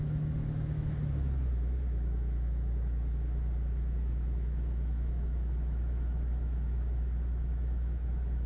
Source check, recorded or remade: remade